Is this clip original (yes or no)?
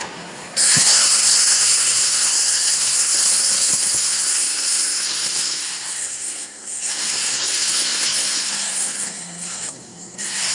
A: no